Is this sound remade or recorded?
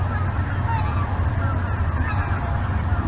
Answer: recorded